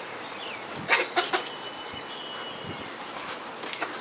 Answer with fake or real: real